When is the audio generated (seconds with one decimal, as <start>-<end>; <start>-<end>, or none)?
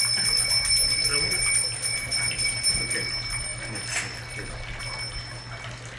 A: none